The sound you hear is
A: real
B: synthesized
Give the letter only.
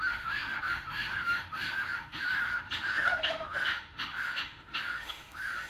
B